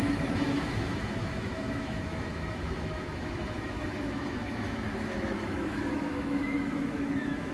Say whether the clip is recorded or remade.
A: remade